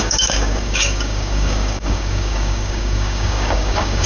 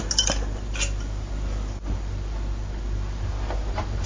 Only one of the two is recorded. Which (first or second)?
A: second